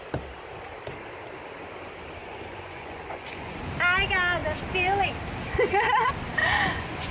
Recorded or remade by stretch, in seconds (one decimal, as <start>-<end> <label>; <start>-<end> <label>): 0.0-2.2 recorded; 2.2-3.6 remade; 3.6-6.4 recorded; 6.4-7.1 remade